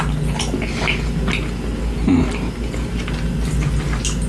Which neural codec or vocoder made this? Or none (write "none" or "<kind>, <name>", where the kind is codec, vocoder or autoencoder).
none